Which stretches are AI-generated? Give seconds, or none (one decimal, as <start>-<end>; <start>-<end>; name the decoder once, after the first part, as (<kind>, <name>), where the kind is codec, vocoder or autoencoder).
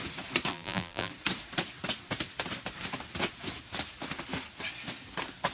0.5-1.1 (vocoder, BigVGAN v2)